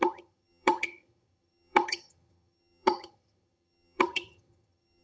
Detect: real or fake fake